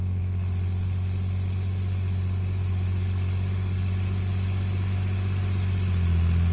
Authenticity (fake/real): real